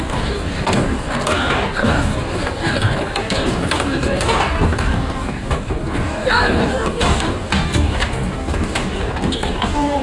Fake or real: fake